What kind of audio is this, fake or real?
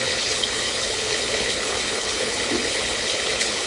fake